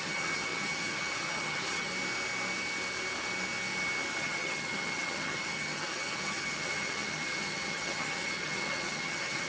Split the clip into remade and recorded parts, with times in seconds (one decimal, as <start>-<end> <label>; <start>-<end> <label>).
0.0-1.9 remade; 1.9-4.2 recorded; 4.2-9.5 remade